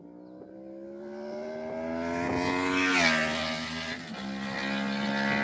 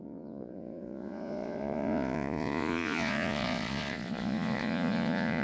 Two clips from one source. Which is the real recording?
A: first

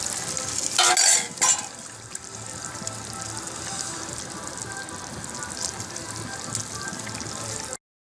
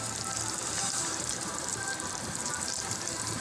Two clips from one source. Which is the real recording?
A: first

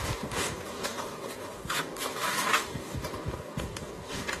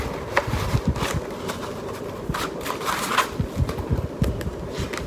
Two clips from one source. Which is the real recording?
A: second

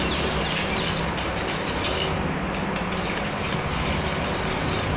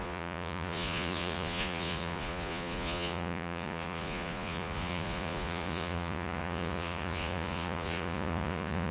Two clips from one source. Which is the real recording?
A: first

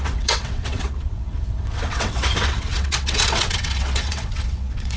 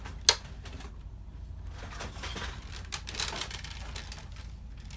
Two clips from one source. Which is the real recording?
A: second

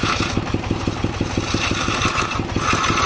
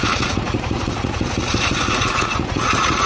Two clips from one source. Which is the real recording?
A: first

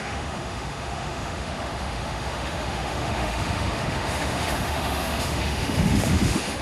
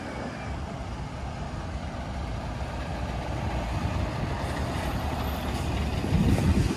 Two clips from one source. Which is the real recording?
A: second